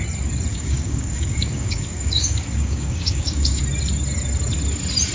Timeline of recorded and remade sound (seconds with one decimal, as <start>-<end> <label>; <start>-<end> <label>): 0.0-0.5 recorded; 0.5-3.6 remade; 3.6-5.1 recorded